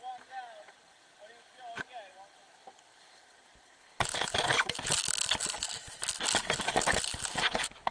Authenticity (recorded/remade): recorded